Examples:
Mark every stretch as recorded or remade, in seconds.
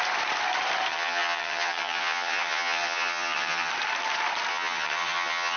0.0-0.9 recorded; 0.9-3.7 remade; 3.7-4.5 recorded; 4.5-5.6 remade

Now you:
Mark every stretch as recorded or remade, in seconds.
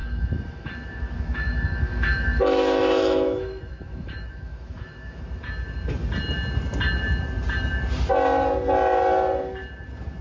0.0-5.2 remade; 5.2-10.2 recorded